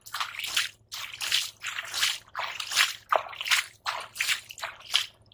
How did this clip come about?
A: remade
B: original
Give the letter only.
B